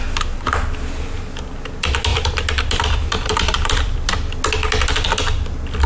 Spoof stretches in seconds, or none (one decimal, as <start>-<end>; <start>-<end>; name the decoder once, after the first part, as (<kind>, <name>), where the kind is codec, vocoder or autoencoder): 2.1-4.1 (vocoder, BigVGAN v2)